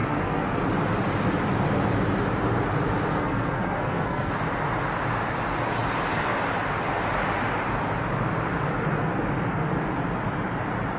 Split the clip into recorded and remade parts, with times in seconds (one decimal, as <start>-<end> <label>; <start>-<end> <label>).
0.0-0.6 remade; 0.6-3.1 recorded; 3.1-4.3 remade; 4.3-11.0 recorded